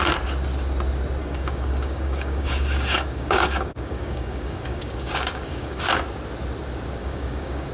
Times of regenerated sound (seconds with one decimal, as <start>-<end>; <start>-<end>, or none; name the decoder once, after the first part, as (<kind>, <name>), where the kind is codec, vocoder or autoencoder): 1.2-5.8 (codec, DAC); 7.0-7.7